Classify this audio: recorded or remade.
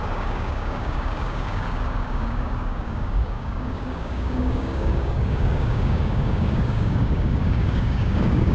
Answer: remade